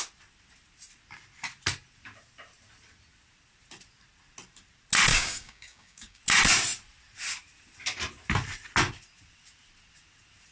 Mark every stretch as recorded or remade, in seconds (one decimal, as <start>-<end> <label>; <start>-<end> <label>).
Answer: 0.0-5.1 recorded; 5.1-6.2 remade; 6.2-10.5 recorded